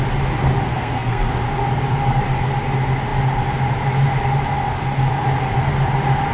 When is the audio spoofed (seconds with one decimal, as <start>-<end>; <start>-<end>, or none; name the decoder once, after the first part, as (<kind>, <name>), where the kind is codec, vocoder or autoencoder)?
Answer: 0.7-1.3 (codec, SNAC)